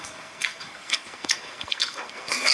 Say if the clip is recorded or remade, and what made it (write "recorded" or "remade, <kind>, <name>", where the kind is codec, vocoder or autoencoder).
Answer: remade, codec, SNAC